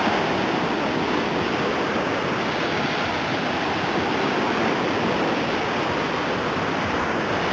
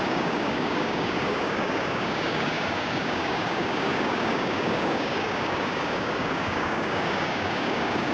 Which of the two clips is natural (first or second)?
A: first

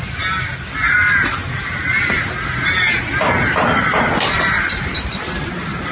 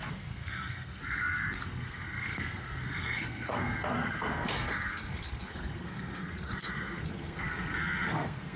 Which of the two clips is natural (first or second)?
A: first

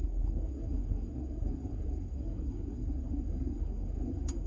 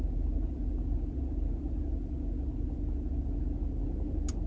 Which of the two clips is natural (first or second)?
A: second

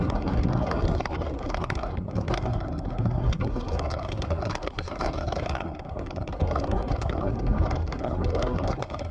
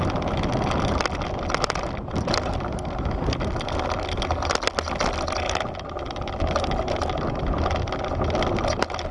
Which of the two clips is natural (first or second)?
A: second